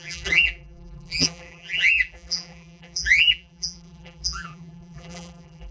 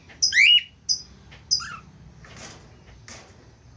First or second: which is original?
second